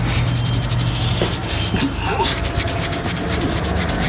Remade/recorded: recorded